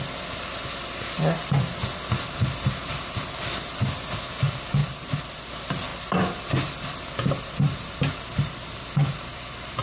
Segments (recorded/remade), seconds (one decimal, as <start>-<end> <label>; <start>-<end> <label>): 0.0-9.8 recorded